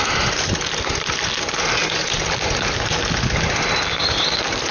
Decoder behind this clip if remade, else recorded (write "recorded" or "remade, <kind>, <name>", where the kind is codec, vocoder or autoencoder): recorded